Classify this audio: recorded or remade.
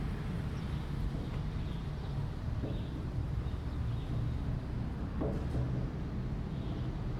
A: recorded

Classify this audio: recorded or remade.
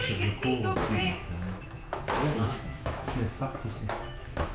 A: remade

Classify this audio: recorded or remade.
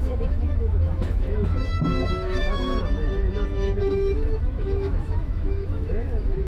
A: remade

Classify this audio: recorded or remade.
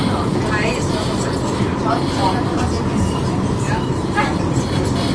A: recorded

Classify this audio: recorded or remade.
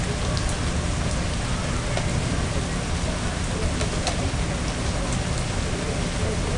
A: recorded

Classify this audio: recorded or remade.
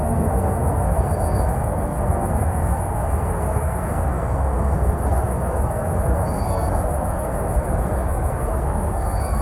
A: remade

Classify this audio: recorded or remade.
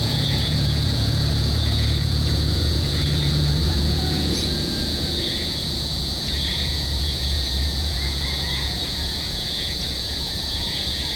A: remade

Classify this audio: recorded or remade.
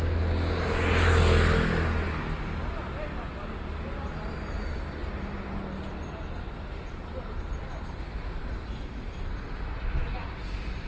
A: recorded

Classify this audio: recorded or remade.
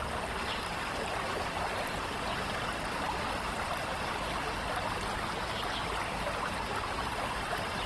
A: recorded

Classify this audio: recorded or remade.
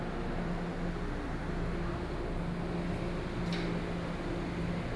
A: recorded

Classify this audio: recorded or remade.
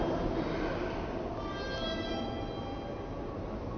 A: recorded